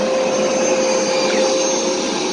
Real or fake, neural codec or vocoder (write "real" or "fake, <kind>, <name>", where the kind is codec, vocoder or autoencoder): real